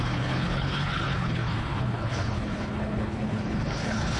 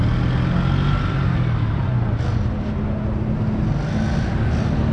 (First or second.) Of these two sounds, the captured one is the second